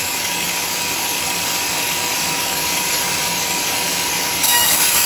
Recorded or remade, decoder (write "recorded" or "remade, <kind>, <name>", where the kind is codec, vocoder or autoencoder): remade, codec, DAC